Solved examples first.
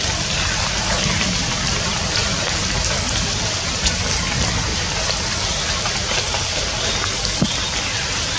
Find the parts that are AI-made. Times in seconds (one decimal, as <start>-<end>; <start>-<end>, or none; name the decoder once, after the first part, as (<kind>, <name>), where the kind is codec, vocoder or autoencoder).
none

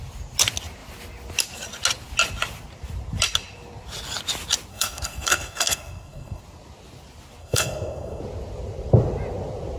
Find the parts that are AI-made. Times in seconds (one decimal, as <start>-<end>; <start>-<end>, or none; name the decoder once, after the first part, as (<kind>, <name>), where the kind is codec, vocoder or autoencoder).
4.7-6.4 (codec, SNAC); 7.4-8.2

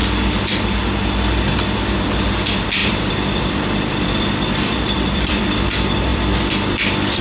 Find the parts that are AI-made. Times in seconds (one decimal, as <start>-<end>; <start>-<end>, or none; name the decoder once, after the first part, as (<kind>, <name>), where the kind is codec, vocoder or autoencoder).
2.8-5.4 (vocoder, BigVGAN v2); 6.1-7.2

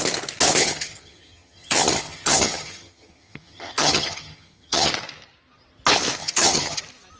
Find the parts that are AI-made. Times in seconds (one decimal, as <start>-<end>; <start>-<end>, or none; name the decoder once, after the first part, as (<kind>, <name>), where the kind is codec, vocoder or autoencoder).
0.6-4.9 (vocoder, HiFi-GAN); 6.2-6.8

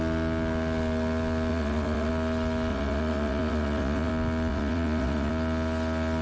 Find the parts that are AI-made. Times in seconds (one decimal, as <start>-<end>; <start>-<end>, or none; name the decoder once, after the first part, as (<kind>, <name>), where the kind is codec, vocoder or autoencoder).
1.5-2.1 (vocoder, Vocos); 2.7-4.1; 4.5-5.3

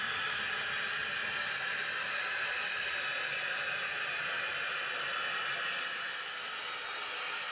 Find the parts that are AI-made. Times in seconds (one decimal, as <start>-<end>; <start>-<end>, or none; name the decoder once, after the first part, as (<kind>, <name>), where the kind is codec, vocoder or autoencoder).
none